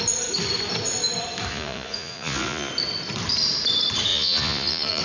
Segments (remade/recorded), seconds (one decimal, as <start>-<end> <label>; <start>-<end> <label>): 0.0-1.5 recorded; 1.5-2.7 remade; 2.7-4.1 recorded; 4.1-5.0 remade